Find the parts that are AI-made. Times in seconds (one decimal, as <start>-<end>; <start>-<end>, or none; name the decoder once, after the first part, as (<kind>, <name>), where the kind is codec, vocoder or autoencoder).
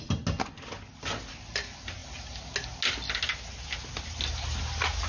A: none